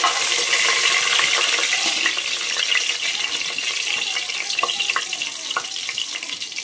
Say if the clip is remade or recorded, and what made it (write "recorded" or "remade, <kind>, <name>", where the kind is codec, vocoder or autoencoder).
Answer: recorded